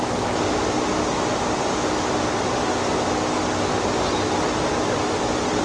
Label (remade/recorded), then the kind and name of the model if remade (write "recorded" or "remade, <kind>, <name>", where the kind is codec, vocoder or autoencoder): recorded